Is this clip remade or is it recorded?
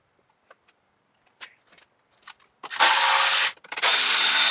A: recorded